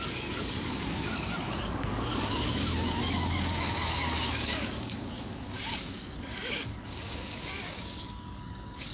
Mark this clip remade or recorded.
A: remade